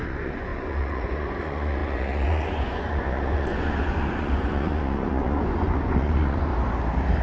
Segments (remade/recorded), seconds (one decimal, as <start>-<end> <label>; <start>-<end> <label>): 0.0-6.5 remade; 6.5-7.2 recorded

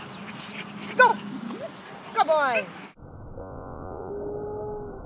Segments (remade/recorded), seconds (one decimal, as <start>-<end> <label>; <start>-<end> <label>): 0.0-3.4 recorded; 3.4-4.1 remade; 4.1-5.1 recorded

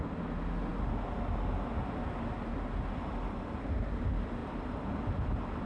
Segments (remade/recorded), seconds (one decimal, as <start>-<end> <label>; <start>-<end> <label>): 0.0-5.7 recorded

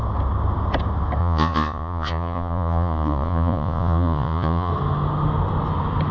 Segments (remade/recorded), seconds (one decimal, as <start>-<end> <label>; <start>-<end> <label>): 0.0-1.2 recorded; 1.2-4.7 remade; 4.7-6.1 recorded

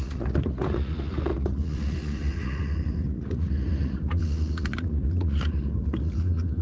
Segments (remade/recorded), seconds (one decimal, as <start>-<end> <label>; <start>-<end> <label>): 0.0-6.6 remade

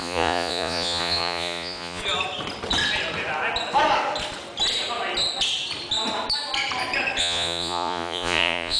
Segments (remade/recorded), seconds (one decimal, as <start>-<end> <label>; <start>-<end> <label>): 0.0-2.0 remade; 2.0-7.2 recorded; 7.2-8.8 remade